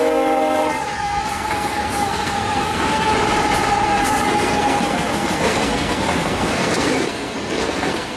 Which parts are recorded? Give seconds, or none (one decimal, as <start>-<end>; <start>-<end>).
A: 3.1-3.7